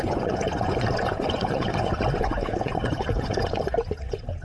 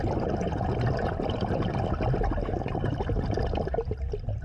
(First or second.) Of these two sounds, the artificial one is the first